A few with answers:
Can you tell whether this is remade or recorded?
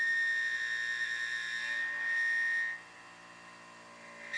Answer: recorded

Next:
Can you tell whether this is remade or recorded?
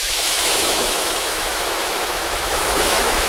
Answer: remade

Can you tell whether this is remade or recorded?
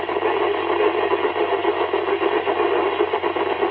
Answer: recorded